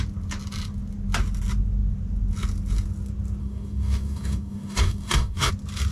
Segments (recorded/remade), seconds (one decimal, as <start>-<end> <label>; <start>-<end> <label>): 0.0-3.4 recorded; 3.4-5.5 remade; 5.5-5.9 recorded